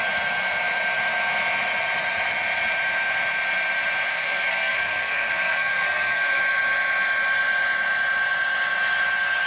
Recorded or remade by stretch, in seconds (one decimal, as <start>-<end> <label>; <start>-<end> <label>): 0.0-4.1 recorded; 4.1-6.4 remade; 6.4-9.5 recorded